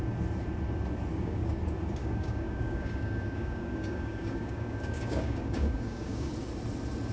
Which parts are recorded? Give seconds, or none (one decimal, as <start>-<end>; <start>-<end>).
0.0-1.1; 1.6-2.0; 6.3-7.1